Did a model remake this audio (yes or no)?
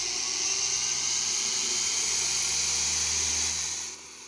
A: no